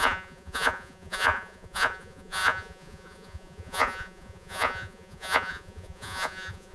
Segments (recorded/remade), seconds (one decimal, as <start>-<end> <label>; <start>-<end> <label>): 0.0-6.7 remade